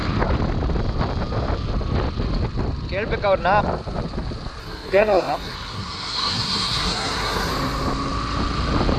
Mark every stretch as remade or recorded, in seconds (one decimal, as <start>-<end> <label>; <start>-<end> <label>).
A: 0.0-4.6 recorded; 4.6-7.5 remade; 7.5-9.0 recorded